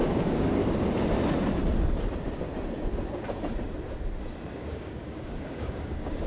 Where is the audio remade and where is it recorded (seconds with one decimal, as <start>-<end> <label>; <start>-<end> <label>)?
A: 0.0-0.6 remade; 0.6-4.4 recorded; 4.4-6.3 remade